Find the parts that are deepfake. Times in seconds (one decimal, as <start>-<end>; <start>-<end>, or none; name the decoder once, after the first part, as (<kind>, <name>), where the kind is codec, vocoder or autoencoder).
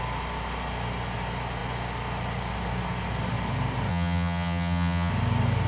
3.9-5.1 (vocoder, HiFi-GAN)